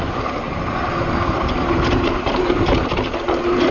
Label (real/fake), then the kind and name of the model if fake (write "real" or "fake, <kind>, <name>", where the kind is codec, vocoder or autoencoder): real